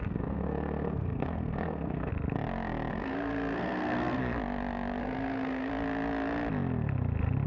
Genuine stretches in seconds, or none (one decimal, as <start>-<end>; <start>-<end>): 2.1-2.9; 4.2-5.0; 5.7-7.5